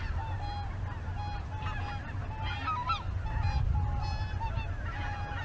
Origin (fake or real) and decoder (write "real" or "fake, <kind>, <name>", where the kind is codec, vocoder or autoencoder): real